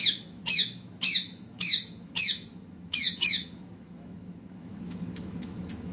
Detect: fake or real fake